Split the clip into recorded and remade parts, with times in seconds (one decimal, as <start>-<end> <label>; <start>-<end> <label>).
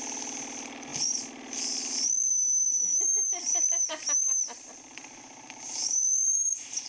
0.0-3.5 recorded; 3.5-6.9 remade